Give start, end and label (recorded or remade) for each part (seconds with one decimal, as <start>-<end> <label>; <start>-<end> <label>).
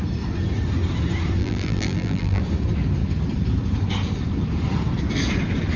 0.0-1.4 recorded; 1.4-2.4 remade; 2.4-5.8 recorded